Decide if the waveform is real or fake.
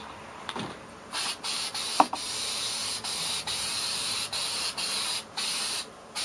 fake